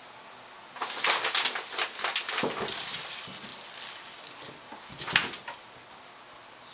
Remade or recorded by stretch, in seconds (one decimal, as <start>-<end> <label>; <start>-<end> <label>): 0.0-6.7 recorded